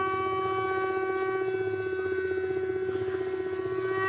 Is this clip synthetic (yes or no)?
no